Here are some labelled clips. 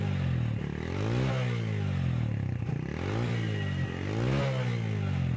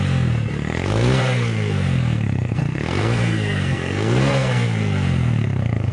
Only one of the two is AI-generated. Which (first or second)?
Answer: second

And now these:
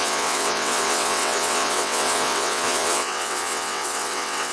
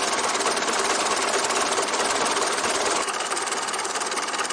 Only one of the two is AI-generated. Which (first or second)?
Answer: first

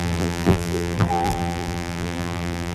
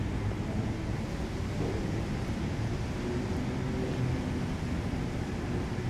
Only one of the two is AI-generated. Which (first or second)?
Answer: first